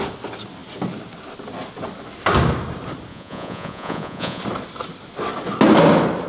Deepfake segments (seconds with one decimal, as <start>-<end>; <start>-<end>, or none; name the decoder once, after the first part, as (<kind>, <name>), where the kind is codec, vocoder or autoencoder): 3.1-4.4 (vocoder, Vocos)